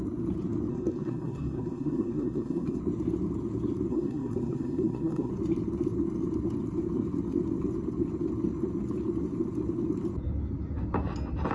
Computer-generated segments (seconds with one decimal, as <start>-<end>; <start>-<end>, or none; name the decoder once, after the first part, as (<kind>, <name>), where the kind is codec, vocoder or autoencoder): 0.7-2.8 (codec, SNAC); 3.9-5.3